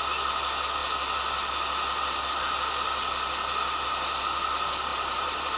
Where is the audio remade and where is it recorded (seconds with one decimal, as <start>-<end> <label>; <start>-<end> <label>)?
0.0-4.9 recorded; 4.9-5.6 remade